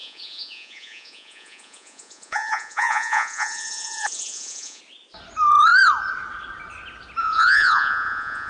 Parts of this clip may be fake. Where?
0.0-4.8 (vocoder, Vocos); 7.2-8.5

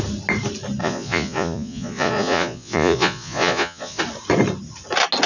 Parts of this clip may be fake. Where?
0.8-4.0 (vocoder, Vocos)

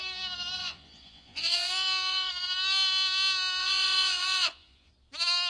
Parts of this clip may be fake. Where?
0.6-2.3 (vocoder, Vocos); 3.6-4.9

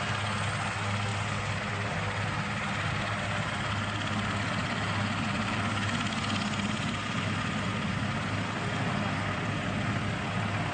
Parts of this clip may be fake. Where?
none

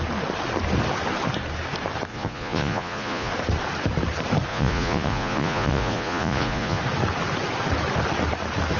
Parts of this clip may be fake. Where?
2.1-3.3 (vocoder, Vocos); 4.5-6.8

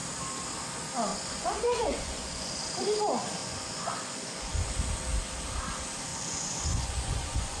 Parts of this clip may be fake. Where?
1.1-2.6 (vocoder, Vocos); 3.4-4.7; 6.1-7.6

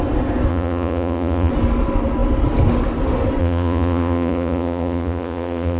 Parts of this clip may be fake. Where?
0.5-1.5 (vocoder, Vocos); 3.4-5.8

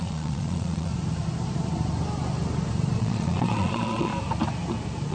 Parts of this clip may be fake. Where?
0.0-0.9 (vocoder, Vocos); 3.0-4.1